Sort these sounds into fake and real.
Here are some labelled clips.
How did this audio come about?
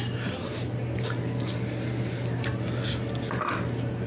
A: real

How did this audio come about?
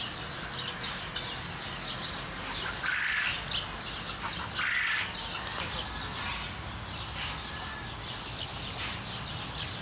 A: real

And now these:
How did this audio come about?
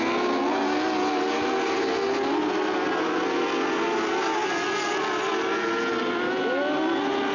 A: real